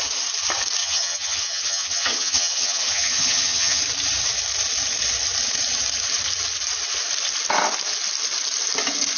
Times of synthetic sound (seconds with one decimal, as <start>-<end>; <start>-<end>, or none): 0.8-3.8